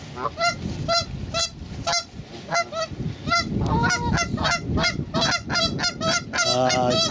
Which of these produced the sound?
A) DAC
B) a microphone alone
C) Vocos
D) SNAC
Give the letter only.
B